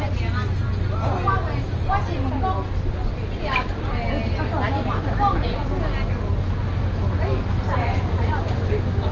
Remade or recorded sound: recorded